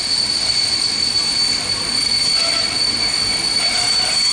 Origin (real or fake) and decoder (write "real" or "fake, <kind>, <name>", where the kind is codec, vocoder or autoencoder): real